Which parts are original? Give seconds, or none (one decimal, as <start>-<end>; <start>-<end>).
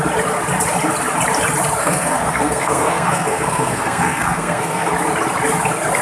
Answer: 0.0-1.8; 4.9-6.0